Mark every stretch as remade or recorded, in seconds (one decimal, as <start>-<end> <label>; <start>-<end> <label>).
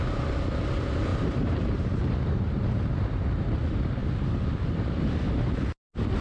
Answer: 0.0-1.1 recorded; 1.1-2.6 remade; 2.6-6.2 recorded